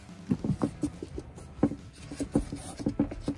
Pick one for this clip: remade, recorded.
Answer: recorded